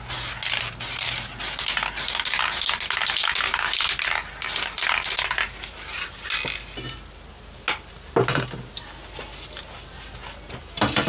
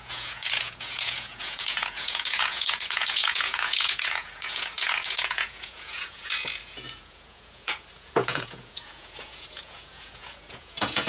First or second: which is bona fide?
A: first